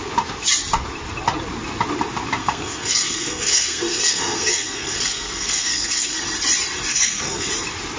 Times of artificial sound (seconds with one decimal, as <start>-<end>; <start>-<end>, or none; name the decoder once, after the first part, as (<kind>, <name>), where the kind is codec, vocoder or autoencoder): 2.4-6.2 (codec, SNAC); 6.9-7.5